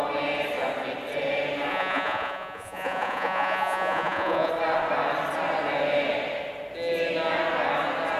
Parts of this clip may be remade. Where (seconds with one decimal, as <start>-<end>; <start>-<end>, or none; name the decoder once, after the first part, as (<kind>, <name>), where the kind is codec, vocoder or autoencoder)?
1.7-4.5 (vocoder, Vocos)